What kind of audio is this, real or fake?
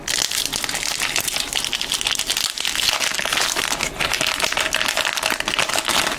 real